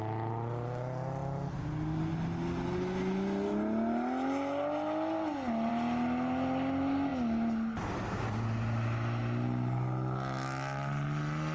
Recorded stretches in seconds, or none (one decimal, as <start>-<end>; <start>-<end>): 0.0-11.5